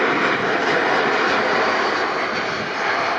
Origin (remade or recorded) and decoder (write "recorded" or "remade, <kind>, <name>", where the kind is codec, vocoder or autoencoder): recorded